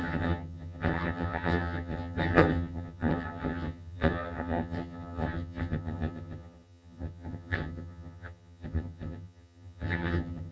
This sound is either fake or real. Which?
fake